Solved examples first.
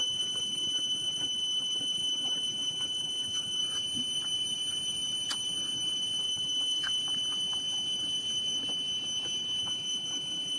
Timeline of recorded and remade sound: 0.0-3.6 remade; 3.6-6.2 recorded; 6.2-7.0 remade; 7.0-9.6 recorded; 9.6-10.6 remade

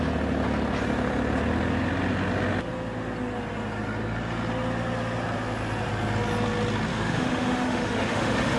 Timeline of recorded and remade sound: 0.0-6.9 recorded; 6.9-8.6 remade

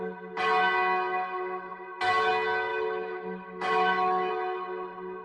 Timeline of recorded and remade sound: 0.0-2.7 recorded; 2.7-4.3 remade; 4.3-5.2 recorded

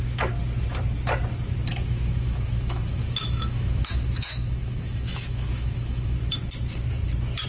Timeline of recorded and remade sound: 0.0-1.7 recorded; 1.7-6.2 remade; 6.2-7.5 recorded

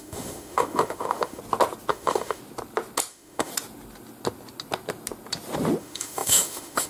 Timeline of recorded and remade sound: 0.0-1.4 remade; 1.4-1.9 recorded; 1.9-2.4 remade; 2.4-3.1 recorded; 3.1-3.5 remade; 3.5-5.8 recorded; 5.8-6.9 remade

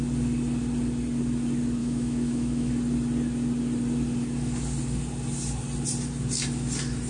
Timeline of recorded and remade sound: 0.0-1.8 recorded; 1.8-2.7 remade; 2.7-7.1 recorded

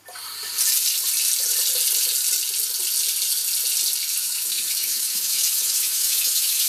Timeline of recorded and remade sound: 0.0-4.2 recorded; 4.2-6.7 remade

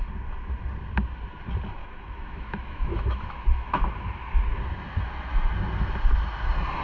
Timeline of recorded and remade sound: 0.0-1.8 recorded; 1.8-3.8 remade; 3.8-6.8 recorded